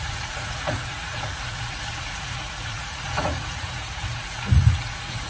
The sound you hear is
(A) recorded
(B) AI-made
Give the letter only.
B